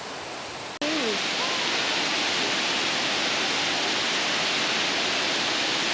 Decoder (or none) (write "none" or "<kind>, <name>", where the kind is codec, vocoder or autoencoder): none